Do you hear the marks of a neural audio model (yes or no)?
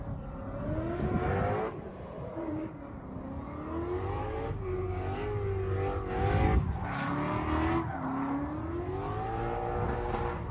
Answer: no